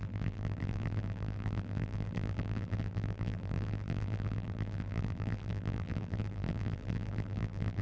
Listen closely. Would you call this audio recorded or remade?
remade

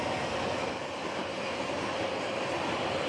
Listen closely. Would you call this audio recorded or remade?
recorded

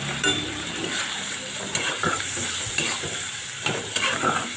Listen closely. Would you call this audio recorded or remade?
remade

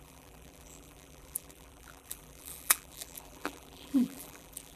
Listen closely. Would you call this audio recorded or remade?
remade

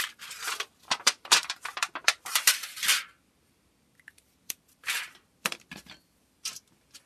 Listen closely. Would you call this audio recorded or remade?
remade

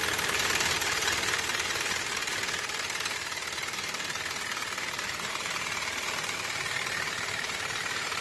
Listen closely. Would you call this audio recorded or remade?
remade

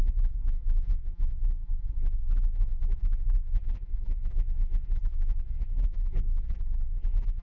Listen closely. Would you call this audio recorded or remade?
remade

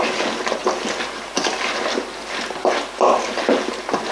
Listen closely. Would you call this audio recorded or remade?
recorded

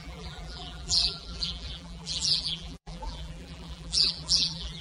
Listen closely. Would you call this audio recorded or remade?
remade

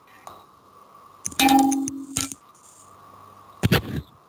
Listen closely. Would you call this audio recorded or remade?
recorded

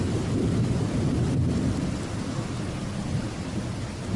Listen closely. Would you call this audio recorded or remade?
recorded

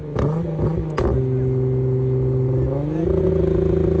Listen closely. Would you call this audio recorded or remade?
recorded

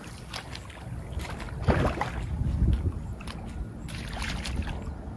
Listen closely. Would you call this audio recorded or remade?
recorded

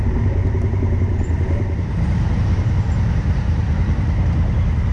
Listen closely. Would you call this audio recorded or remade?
remade